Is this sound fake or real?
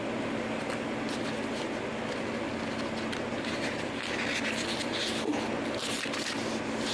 real